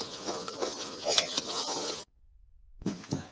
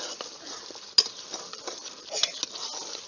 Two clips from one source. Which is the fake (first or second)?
first